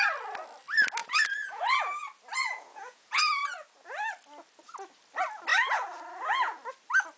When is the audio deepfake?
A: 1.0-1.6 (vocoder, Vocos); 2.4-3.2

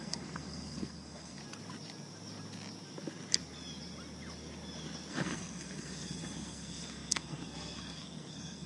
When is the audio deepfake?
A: 0.0-1.4 (codec, SNAC); 5.1-8.7

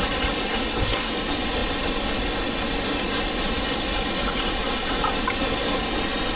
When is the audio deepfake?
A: 0.4-1.1 (codec, SNAC)

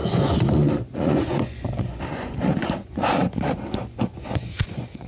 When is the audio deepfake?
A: 0.0-5.1 (vocoder, Vocos)

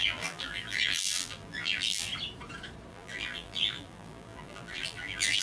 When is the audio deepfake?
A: 0.0-2.1 (vocoder, BigVGAN v2); 2.9-5.4

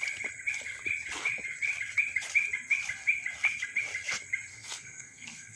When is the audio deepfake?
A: 4.5-5.6 (codec, SNAC)

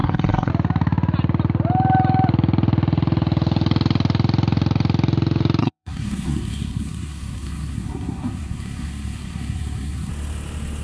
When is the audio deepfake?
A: 0.0-0.5 (codec, SNAC); 5.6-10.1

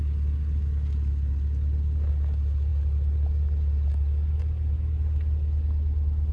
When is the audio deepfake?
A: none